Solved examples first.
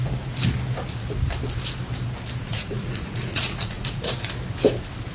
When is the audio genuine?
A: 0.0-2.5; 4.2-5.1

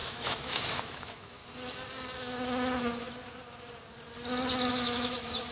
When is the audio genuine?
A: 1.4-4.7